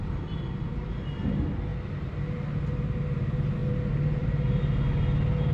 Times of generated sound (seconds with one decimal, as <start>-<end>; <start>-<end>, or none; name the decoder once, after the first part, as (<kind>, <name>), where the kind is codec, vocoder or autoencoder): 1.7-2.2 (vocoder, BigVGAN v2); 3.6-4.6